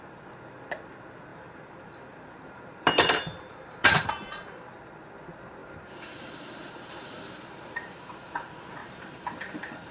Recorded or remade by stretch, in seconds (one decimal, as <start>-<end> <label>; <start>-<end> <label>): 0.0-1.3 recorded; 1.3-4.7 remade; 4.7-5.6 recorded; 5.6-8.3 remade; 8.3-8.8 recorded; 8.8-9.9 remade